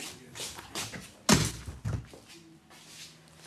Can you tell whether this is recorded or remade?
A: recorded